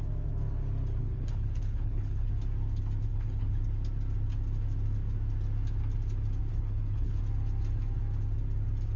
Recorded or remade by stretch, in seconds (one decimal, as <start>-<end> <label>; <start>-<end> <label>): 0.0-1.0 recorded; 1.0-2.3 remade; 2.3-3.1 recorded; 3.1-3.6 remade; 3.6-6.5 recorded; 6.5-7.2 remade; 7.2-9.0 recorded